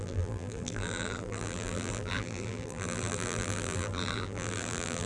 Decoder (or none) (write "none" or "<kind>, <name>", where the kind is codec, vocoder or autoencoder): vocoder, BigVGAN v2